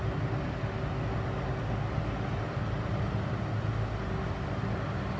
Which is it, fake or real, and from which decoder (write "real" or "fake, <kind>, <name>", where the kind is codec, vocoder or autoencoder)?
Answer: real